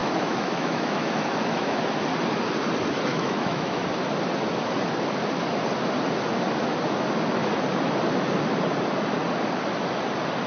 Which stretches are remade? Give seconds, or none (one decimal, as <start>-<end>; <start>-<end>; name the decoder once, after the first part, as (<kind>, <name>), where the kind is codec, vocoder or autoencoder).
0.0-1.8 (autoencoder, DAC-VAE); 3.1-3.8